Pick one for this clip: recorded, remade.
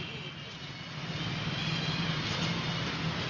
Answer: recorded